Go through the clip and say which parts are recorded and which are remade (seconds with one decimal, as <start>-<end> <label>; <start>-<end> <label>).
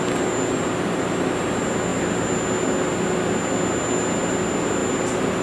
0.0-5.4 recorded